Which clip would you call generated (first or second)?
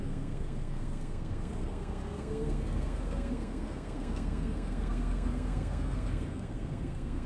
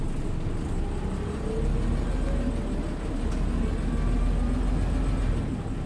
first